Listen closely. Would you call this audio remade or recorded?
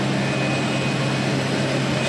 recorded